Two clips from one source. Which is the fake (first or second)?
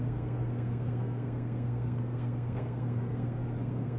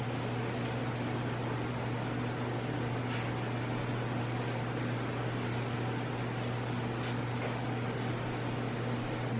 first